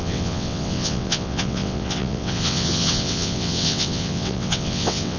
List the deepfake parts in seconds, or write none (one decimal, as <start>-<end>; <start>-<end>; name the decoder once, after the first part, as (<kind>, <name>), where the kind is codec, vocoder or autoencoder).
0.0-5.2 (vocoder, WaveNeXt)